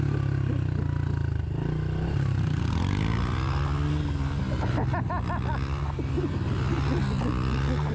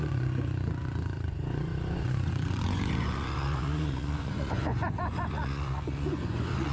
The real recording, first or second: first